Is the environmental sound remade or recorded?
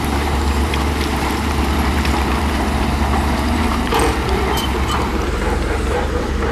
remade